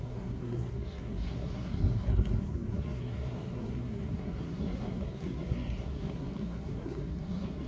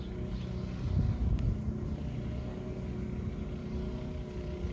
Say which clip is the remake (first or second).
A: first